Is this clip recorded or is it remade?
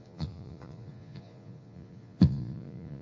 remade